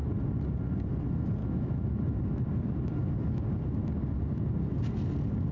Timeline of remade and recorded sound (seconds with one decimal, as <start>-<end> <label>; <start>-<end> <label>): 0.0-1.4 recorded; 1.4-2.0 remade; 2.0-5.5 recorded